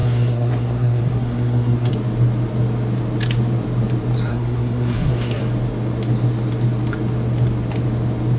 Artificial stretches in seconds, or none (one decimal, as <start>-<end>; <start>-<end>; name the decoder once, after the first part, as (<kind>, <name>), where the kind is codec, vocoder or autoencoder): 0.0-1.9 (codec, SNAC); 4.3-5.4